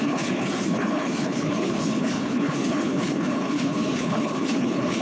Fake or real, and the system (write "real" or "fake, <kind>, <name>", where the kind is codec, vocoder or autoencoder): fake, codec, HILCodec